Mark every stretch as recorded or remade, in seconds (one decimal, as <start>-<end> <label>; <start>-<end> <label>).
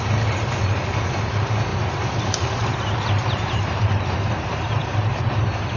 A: 0.0-1.7 recorded; 1.7-5.2 remade; 5.2-5.8 recorded